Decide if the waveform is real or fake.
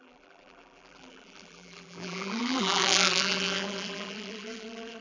fake